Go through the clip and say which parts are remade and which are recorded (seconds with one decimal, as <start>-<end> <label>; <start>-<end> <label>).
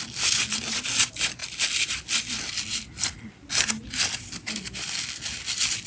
0.0-5.9 recorded